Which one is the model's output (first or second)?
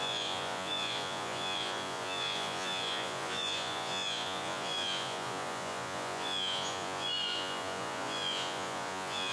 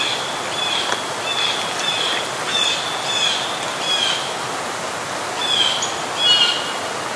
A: first